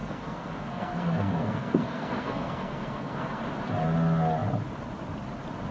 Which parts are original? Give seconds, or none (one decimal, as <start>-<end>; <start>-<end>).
3.4-5.7

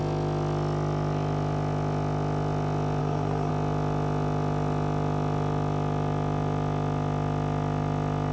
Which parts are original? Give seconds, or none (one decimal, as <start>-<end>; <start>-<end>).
0.0-3.0; 3.5-8.3

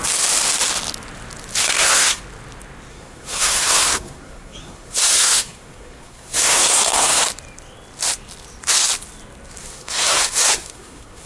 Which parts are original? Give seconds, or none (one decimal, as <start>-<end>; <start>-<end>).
0.0-1.6; 2.2-2.9; 7.2-9.6